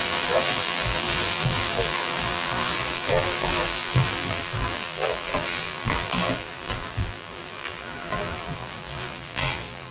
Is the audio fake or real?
fake